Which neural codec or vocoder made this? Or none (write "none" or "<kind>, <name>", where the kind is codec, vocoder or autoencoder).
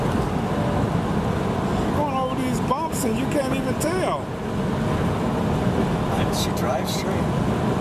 none